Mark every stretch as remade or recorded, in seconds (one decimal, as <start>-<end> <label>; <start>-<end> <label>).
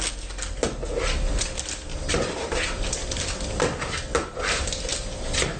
0.0-1.9 recorded; 1.9-2.6 remade; 2.6-5.6 recorded